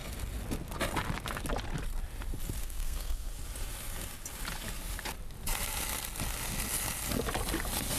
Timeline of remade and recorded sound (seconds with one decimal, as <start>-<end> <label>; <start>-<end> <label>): 0.0-2.6 recorded; 2.6-3.3 remade; 3.3-8.0 recorded